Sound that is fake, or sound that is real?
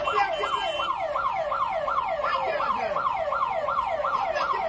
real